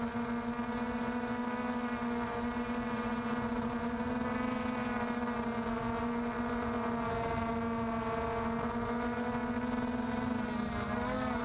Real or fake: real